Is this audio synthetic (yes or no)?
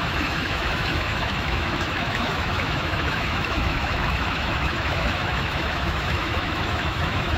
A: yes